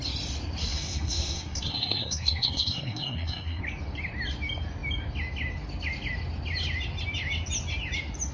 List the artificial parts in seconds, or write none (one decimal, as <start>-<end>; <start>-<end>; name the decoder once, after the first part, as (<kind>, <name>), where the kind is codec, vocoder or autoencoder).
0.6-3.6 (codec, SNAC)